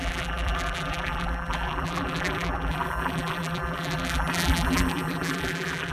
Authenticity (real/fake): fake